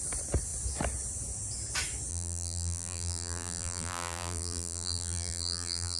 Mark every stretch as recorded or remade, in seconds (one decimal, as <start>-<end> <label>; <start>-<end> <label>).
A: 0.0-2.1 recorded; 2.1-6.0 remade